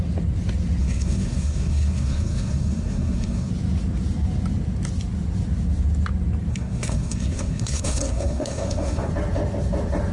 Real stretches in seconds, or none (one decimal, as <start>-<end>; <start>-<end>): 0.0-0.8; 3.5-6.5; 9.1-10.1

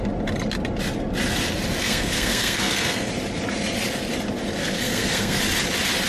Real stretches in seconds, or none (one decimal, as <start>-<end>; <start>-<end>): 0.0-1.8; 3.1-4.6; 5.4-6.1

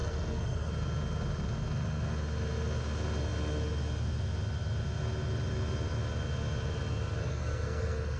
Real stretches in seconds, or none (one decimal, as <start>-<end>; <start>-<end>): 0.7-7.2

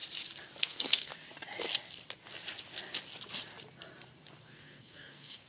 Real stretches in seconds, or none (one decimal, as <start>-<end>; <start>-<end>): 0.0-0.6; 1.1-4.4